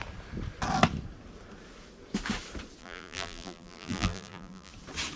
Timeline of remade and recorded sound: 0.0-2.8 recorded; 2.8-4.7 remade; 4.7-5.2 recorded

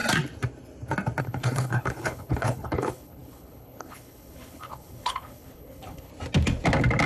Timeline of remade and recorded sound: 0.0-1.2 recorded; 1.2-6.1 remade; 6.1-7.1 recorded

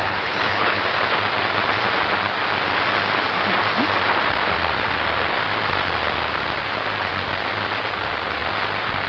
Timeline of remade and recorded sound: 0.0-0.8 remade; 0.8-9.1 recorded

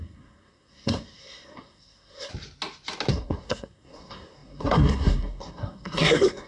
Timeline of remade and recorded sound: 0.0-2.3 remade; 2.3-3.1 recorded; 3.1-6.5 remade

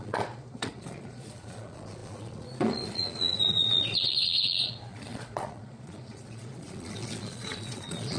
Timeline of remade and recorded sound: 0.0-8.2 remade

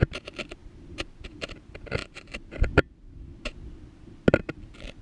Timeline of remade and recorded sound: 0.0-0.6 recorded; 0.6-1.6 remade; 1.6-2.0 recorded; 2.0-2.5 remade; 2.5-5.0 recorded

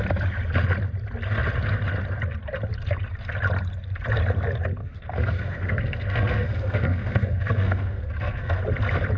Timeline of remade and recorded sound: 0.0-4.8 recorded; 4.8-8.6 remade; 8.6-9.2 recorded